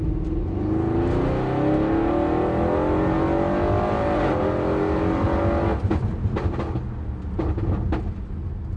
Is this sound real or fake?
real